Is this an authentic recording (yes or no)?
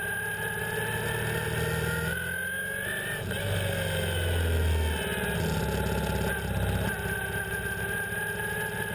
yes